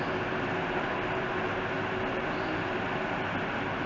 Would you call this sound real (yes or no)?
yes